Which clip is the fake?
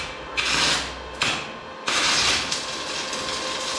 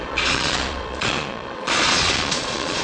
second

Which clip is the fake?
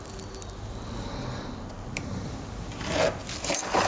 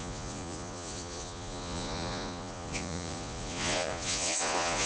second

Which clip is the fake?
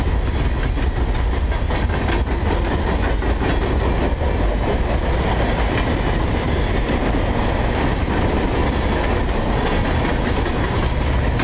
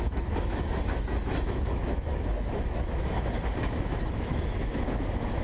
second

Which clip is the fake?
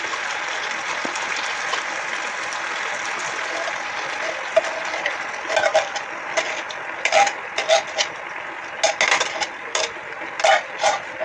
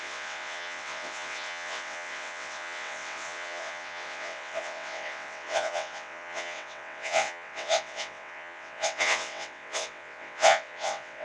second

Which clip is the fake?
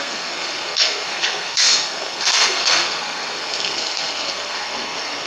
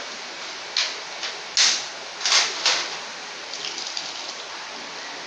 first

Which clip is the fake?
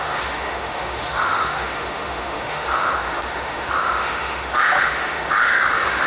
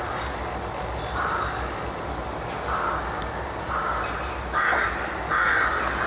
first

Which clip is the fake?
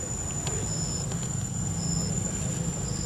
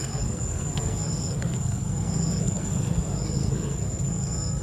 second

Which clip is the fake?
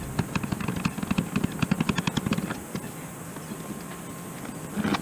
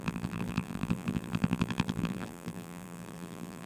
second